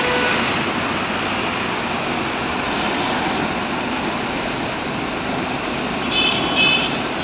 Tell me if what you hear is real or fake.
real